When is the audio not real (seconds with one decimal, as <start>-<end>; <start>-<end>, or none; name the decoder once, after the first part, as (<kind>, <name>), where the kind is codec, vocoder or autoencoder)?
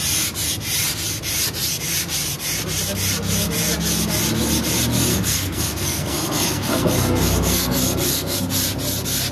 5.1-8.4 (codec, SNAC)